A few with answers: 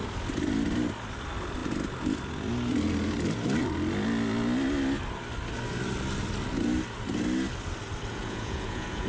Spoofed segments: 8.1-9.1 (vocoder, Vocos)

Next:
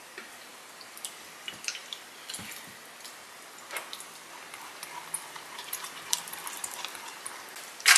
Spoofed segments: none

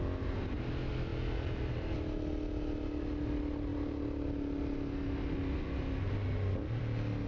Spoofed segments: none

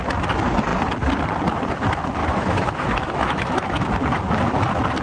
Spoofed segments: 2.2-3.9 (autoencoder, DAC-VAE)

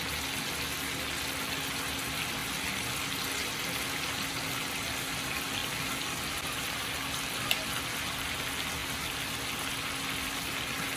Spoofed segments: none

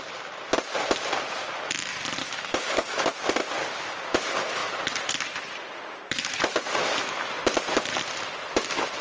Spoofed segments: 2.2-3.1 (codec, DAC)